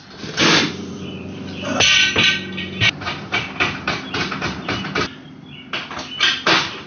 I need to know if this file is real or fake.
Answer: fake